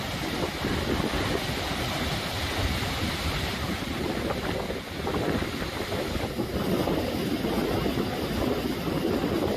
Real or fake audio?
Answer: real